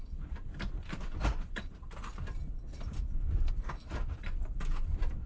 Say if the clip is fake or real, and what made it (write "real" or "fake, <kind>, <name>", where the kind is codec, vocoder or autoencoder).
fake, vocoder, BigVGAN v2